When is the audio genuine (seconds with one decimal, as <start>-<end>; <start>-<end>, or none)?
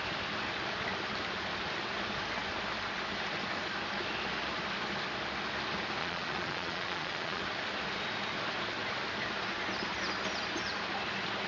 0.0-6.0; 7.4-11.5